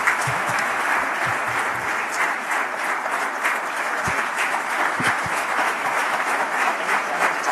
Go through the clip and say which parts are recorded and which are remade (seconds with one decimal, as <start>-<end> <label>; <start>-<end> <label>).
0.0-0.9 remade; 0.9-3.8 recorded; 3.8-7.0 remade; 7.0-7.5 recorded